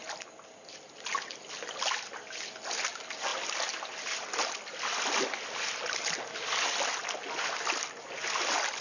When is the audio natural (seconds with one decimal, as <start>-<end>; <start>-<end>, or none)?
0.0-3.3; 5.3-8.8